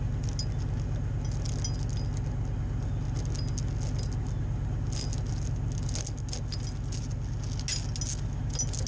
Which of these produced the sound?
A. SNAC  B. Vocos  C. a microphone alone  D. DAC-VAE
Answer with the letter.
C